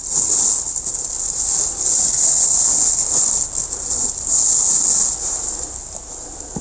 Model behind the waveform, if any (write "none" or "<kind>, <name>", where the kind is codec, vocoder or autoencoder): none